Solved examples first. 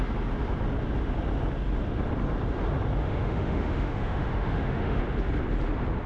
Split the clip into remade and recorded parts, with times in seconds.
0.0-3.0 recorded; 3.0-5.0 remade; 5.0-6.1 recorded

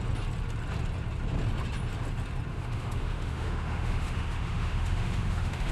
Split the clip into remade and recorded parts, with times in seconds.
0.0-2.5 recorded; 2.5-5.7 remade

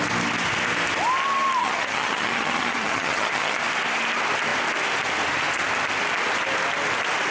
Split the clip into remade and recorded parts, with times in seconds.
0.0-1.6 recorded; 1.6-3.6 remade; 3.6-7.3 recorded

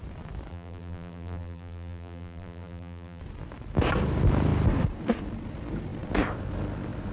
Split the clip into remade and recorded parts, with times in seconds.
0.0-0.5 recorded; 0.5-3.2 remade; 3.2-7.1 recorded

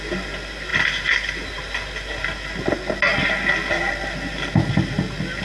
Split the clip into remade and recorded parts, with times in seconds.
0.0-5.4 recorded

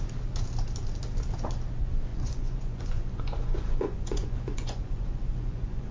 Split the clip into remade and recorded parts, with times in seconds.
0.0-2.1 recorded; 2.1-5.9 remade

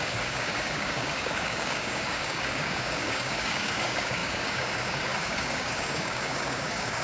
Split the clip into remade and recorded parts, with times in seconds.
0.0-7.0 remade